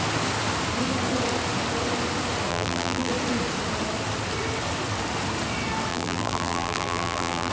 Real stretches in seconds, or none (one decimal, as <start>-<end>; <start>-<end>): 0.0-2.5; 3.1-5.9

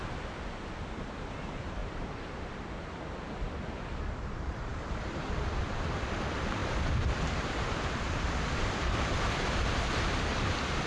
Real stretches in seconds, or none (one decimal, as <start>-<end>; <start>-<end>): 4.7-5.6

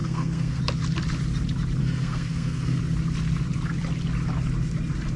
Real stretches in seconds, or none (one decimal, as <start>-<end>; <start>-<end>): 0.6-1.8; 2.8-5.2

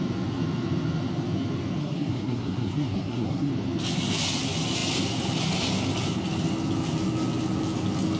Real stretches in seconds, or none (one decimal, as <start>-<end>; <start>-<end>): 0.0-1.8; 3.5-8.2

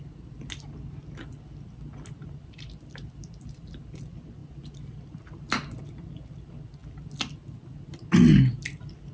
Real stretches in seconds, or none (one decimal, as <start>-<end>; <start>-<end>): 0.0-9.1